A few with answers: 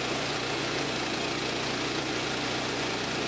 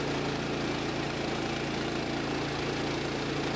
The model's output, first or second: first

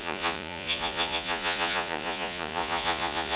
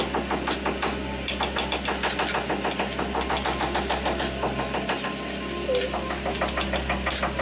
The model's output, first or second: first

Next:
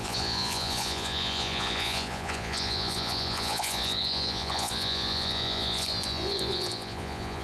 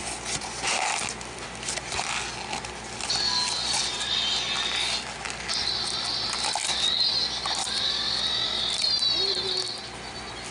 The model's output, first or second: first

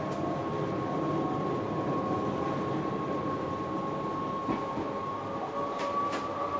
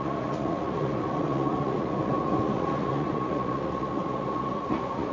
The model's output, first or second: second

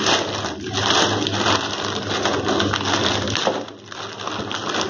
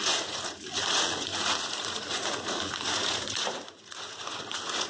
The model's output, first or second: second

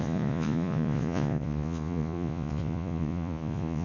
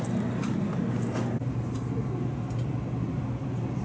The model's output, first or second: first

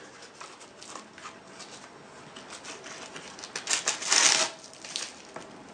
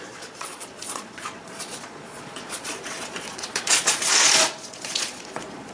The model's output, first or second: second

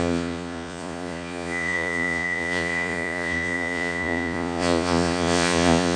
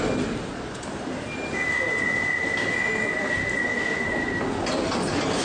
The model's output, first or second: first